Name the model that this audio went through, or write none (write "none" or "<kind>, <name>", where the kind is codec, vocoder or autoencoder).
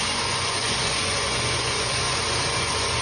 vocoder, Vocos